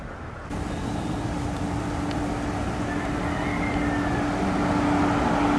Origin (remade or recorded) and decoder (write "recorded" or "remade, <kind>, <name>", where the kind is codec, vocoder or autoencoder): recorded